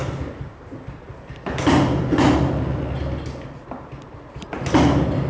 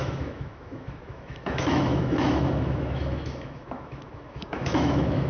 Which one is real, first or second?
first